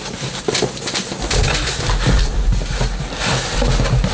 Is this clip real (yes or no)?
yes